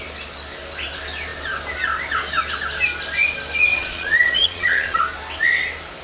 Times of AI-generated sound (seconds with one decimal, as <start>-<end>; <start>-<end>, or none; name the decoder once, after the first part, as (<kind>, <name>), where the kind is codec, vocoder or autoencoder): 3.7-5.0 (vocoder, Vocos)